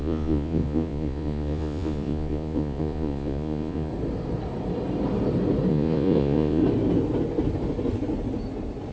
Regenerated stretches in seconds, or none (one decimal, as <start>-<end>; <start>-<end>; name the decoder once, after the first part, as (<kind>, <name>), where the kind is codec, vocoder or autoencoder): 0.0-3.9 (vocoder, Vocos); 5.7-6.6